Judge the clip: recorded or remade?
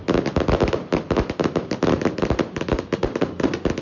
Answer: recorded